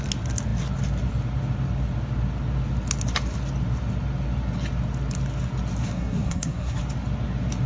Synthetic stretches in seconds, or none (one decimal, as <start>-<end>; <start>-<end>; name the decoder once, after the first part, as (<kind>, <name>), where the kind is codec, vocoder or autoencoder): 5.8-6.8 (codec, SNAC)